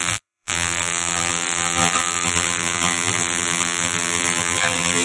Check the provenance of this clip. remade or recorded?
remade